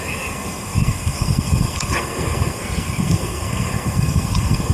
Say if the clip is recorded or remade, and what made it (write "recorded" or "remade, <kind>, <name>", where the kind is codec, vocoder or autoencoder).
remade, codec, SNAC